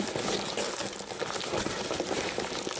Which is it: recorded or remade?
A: recorded